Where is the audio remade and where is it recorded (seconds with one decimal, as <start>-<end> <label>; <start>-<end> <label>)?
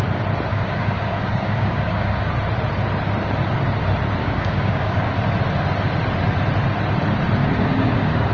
0.0-0.5 recorded; 0.5-2.2 remade; 2.2-4.2 recorded; 4.2-5.1 remade; 5.1-7.4 recorded; 7.4-8.3 remade